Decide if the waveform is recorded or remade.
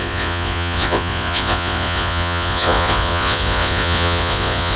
remade